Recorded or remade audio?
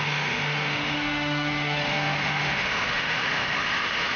remade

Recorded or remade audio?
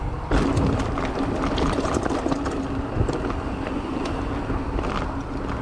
recorded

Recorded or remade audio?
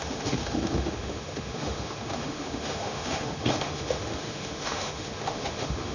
remade